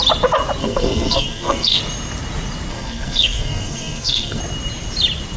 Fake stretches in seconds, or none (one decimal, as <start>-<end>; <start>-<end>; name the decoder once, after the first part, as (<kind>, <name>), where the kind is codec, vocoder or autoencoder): 0.6-1.8 (codec, SNAC); 2.7-4.4